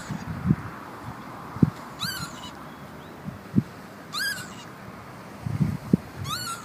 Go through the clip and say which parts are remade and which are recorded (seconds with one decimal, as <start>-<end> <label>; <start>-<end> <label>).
0.0-3.7 remade; 3.7-5.7 recorded; 5.7-6.6 remade